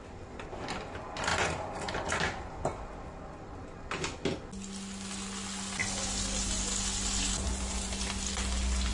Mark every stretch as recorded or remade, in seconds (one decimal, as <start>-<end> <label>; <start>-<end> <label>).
0.0-8.9 recorded